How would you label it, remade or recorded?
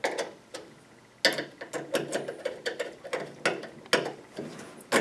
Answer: recorded